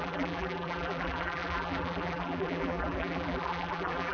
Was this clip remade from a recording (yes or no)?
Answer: yes